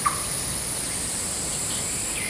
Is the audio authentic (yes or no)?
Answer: yes